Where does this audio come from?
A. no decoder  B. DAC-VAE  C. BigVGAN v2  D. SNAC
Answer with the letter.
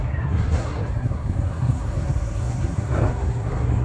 D